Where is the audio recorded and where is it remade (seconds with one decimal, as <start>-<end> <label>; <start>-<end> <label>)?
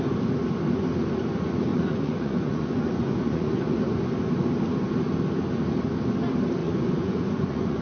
0.0-1.7 recorded; 1.7-3.8 remade; 3.8-6.6 recorded; 6.6-7.8 remade